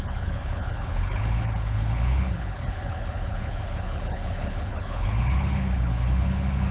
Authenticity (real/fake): fake